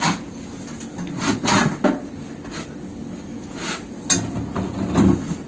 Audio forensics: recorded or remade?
recorded